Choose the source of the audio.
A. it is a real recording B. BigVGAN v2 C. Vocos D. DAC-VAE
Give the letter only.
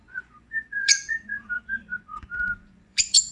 C